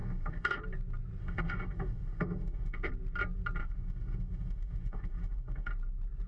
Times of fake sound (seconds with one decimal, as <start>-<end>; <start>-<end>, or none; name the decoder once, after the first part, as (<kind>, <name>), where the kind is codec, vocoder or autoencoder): 0.0-0.6 (autoencoder, DAC-VAE); 1.2-2.9; 3.6-5.7